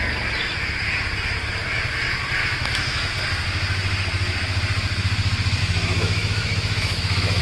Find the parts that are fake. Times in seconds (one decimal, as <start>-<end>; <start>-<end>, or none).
2.4-3.1; 5.6-7.4